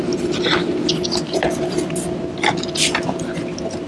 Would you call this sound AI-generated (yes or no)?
no